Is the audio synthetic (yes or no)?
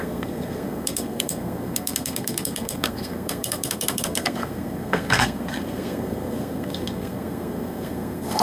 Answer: yes